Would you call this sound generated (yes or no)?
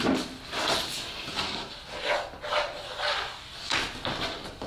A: no